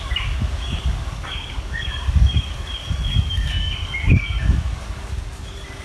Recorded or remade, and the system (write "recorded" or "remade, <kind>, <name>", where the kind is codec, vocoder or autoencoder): remade, codec, DAC